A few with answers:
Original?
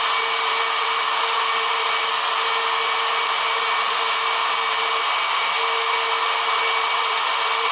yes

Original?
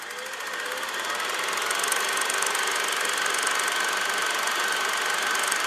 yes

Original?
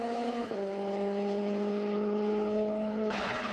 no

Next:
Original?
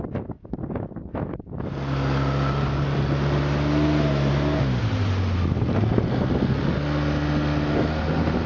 yes